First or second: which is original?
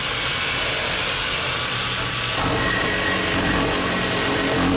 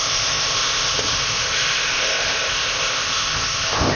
first